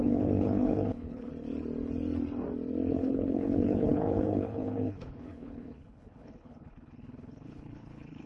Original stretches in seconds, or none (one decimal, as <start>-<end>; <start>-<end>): 1.3-2.9